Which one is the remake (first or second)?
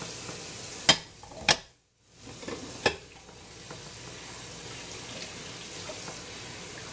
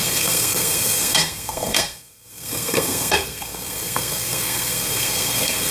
second